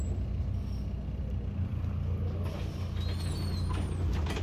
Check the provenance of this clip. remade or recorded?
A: recorded